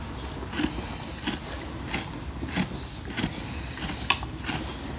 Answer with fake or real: real